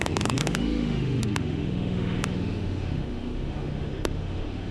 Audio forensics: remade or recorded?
remade